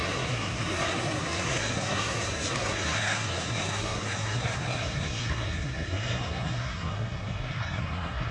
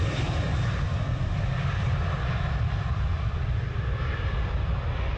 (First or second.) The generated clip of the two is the first